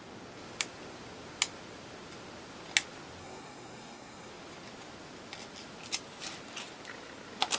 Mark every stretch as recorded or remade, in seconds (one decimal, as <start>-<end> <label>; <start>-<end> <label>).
0.0-3.2 recorded; 3.2-4.3 remade; 4.3-7.6 recorded